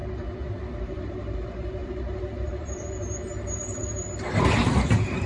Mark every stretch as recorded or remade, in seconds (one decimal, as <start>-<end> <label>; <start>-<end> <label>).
0.0-0.8 recorded; 0.8-5.3 remade